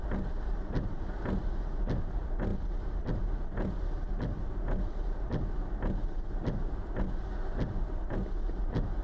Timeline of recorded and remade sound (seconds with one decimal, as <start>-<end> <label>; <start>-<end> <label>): 0.0-9.0 recorded